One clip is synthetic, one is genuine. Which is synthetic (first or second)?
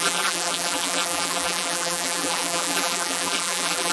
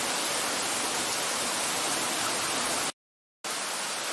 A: first